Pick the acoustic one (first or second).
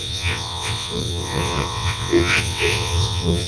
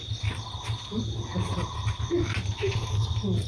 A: second